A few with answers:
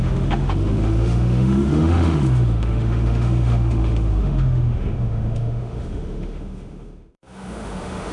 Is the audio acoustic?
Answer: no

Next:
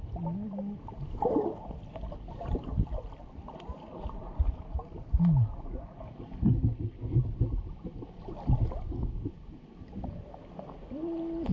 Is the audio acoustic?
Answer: yes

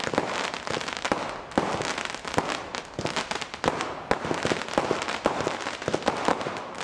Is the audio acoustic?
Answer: yes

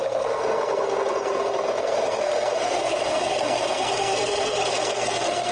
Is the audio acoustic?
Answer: no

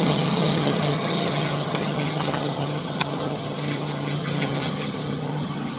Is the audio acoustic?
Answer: no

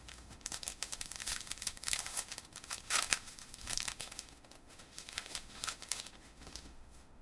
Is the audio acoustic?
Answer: no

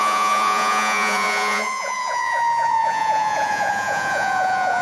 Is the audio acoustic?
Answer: no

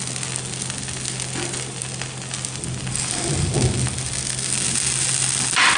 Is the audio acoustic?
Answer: yes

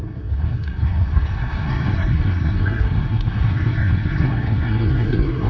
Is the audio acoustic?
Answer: no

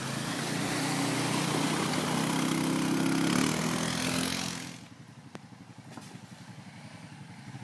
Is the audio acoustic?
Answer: yes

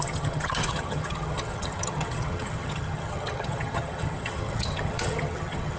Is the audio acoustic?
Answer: no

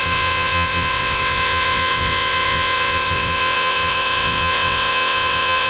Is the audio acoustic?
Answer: no